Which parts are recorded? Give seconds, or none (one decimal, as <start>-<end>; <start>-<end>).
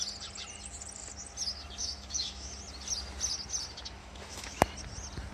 0.0-1.8; 2.5-4.0; 4.6-5.3